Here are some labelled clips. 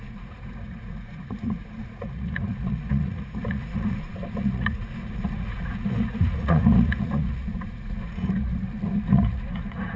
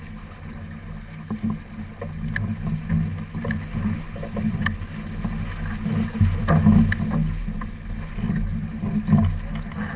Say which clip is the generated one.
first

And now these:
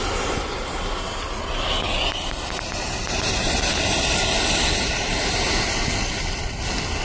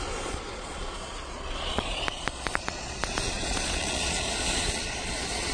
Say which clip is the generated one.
second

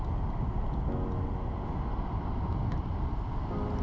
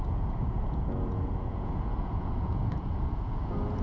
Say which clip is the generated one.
second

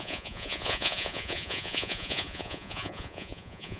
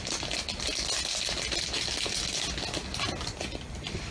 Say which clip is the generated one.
first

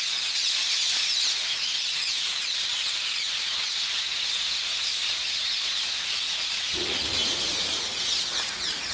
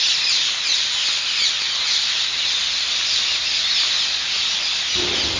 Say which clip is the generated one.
first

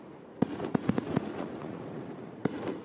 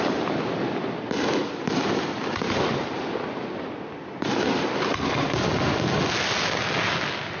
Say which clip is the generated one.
first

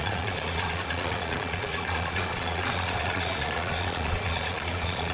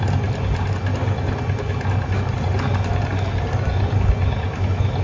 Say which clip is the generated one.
first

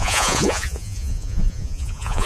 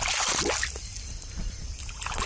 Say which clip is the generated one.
first